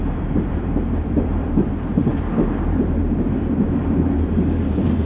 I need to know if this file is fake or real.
fake